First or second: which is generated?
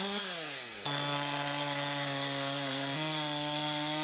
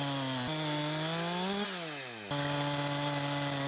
first